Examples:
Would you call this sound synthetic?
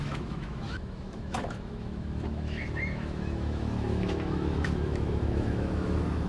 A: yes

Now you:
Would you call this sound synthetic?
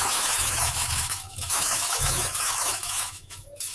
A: yes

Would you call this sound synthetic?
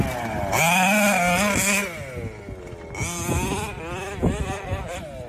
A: no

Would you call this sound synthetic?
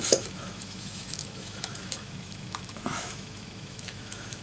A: yes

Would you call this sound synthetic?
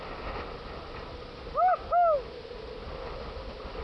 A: no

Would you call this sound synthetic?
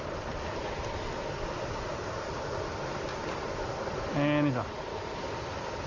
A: no